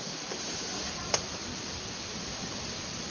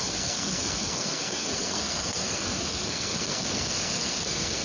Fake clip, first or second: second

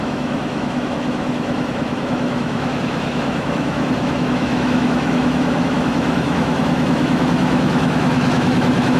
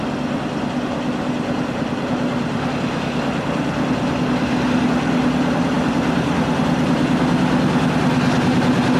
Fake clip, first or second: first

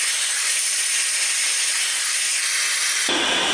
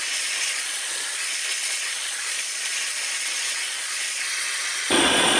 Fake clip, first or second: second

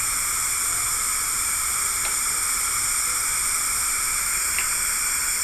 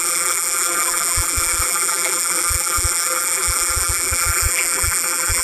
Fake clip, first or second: second